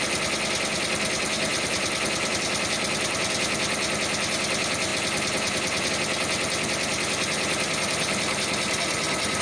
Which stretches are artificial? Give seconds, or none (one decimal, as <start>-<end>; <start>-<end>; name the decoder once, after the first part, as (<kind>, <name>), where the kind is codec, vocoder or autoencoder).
none